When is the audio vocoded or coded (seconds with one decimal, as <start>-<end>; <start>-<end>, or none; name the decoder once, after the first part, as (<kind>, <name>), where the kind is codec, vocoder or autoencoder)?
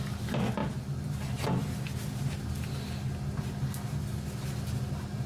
none